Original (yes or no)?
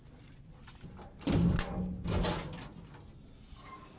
yes